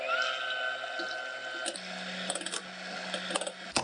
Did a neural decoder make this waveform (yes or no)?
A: no